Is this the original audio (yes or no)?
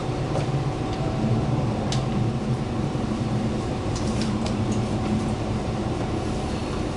no